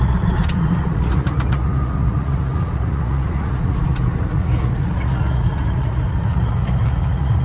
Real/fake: fake